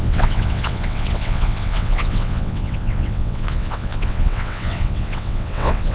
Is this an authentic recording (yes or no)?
no